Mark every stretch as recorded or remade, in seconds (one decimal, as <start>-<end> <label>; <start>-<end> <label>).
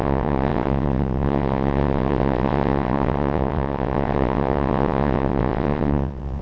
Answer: 0.0-6.4 remade